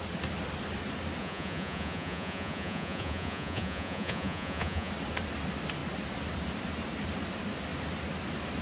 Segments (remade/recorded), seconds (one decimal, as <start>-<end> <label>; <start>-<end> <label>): 0.0-1.2 recorded; 1.2-4.9 remade; 4.9-8.6 recorded